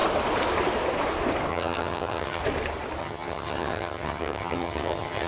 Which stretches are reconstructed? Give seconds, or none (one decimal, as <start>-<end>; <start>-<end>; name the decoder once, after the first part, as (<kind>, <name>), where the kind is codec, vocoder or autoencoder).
1.5-2.4 (vocoder, HiFi-GAN); 3.0-5.3